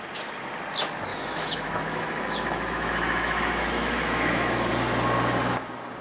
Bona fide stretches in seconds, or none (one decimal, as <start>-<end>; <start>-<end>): 0.0-1.1; 4.7-6.0